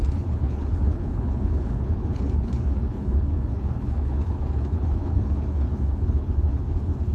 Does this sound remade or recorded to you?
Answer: remade